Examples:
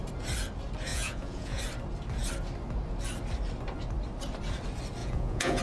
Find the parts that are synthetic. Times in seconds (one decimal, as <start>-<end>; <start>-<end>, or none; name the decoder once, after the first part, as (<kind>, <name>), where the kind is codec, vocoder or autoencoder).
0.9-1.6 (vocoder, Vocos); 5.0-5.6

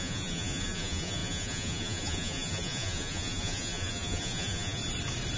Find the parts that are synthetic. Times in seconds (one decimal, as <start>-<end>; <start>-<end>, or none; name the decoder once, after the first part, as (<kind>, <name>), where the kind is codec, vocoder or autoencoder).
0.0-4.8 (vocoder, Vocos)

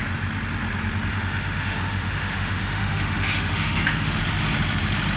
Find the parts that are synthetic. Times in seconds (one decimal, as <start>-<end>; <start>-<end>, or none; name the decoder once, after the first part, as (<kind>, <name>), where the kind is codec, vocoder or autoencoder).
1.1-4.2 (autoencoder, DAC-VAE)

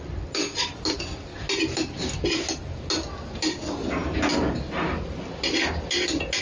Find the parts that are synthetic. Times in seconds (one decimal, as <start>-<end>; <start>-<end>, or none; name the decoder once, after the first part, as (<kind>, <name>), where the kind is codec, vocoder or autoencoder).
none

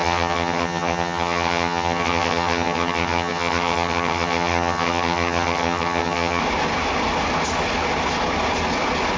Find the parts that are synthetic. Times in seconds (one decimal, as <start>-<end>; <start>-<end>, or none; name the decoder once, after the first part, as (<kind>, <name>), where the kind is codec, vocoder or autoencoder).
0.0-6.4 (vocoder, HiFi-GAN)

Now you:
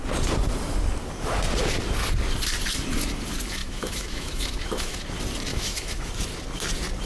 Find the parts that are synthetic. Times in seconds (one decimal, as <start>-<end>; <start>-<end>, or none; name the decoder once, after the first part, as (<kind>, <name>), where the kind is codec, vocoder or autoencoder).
3.6-5.0 (autoencoder, DAC-VAE); 5.5-6.1